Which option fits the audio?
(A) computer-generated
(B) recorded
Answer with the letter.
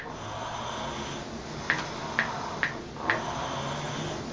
B